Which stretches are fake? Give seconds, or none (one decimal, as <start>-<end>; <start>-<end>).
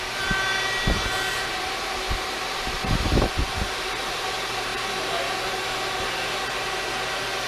none